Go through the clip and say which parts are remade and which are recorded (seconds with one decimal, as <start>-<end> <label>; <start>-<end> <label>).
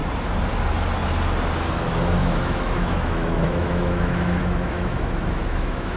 0.0-2.2 recorded; 2.2-6.0 remade